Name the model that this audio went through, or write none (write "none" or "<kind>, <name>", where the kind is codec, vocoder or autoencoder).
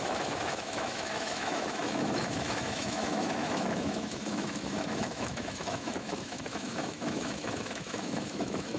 autoencoder, DAC-VAE